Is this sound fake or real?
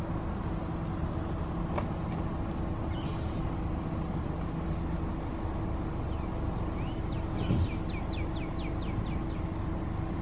real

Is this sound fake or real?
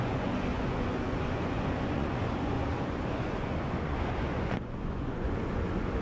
fake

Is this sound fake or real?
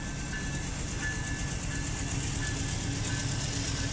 real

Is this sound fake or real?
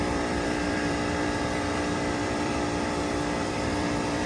fake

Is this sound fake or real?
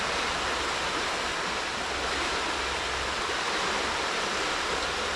real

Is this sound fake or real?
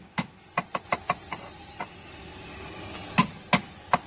real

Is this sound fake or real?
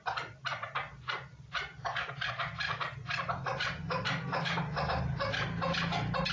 real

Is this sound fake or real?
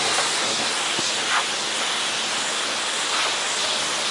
real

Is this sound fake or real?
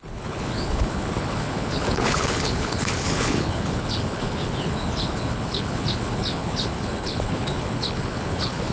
fake